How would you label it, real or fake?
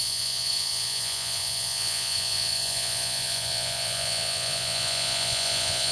fake